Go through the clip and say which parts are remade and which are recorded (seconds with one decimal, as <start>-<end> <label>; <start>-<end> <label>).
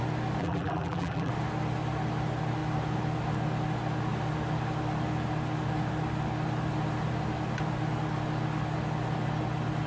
0.0-0.4 recorded; 0.4-1.3 remade; 1.3-9.9 recorded